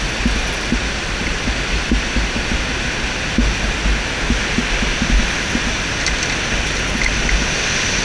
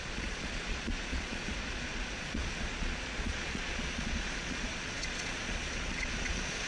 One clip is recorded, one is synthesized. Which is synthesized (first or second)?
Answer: second